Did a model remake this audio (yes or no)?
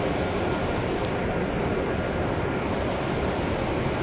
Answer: no